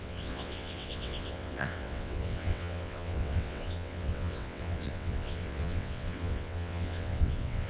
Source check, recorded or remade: remade